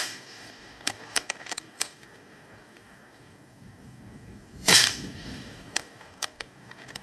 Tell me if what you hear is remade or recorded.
remade